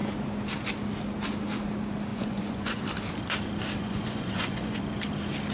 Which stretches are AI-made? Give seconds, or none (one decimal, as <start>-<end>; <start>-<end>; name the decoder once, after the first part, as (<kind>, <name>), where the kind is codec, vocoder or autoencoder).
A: 2.1-2.8 (vocoder, Vocos); 3.8-4.8